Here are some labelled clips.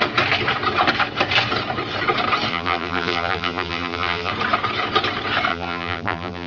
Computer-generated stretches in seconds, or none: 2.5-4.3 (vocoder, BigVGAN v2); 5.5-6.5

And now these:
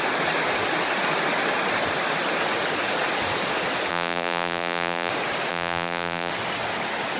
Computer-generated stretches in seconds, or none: 3.9-5.1 (vocoder, BigVGAN v2); 5.5-6.3

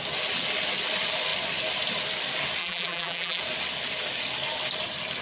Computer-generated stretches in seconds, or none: 2.6-3.4 (vocoder, BigVGAN v2)

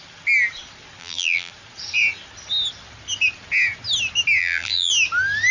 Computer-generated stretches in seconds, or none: 1.0-1.5 (vocoder, BigVGAN v2); 4.4-4.9